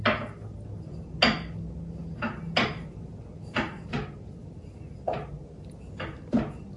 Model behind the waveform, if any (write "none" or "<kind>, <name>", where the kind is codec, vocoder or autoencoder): none